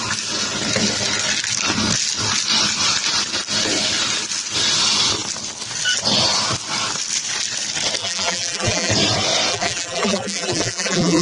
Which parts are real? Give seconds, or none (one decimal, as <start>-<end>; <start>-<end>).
0.0-8.0; 8.9-9.5